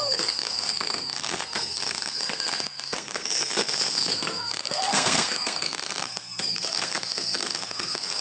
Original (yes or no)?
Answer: no